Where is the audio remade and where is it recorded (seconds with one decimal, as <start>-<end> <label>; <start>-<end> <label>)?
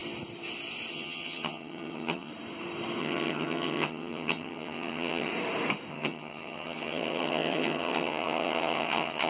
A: 0.0-0.9 recorded; 0.9-2.3 remade; 2.3-3.0 recorded; 3.0-5.3 remade; 5.3-5.9 recorded; 5.9-9.3 remade